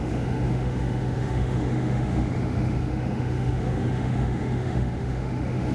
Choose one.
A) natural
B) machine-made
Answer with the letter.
B